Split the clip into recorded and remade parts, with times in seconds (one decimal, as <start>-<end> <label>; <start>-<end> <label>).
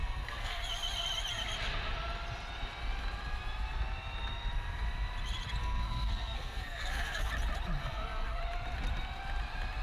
0.0-0.6 remade; 0.6-5.6 recorded; 5.6-7.3 remade; 7.3-7.8 recorded; 7.8-8.4 remade; 8.4-9.8 recorded